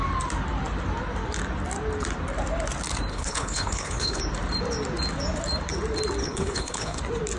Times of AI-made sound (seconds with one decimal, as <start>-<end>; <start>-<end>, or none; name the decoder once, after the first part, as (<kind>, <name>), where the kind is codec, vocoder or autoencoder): 3.1-4.2 (codec, HILCodec); 6.2-7.0